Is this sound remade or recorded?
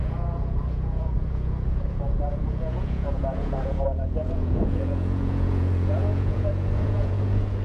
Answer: remade